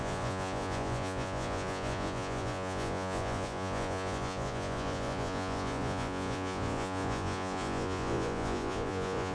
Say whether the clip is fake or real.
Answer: fake